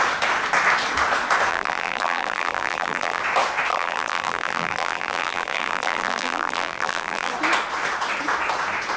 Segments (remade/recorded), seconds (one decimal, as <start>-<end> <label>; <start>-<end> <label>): 0.0-1.5 recorded; 1.5-3.2 remade; 3.2-3.7 recorded; 3.7-7.3 remade; 7.3-9.0 recorded